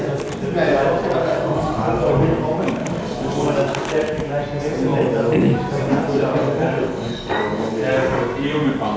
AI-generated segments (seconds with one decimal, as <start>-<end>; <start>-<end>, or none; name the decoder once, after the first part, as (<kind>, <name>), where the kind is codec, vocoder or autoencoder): 1.2-2.1 (codec, DAC); 2.8-3.3; 6.4-7.9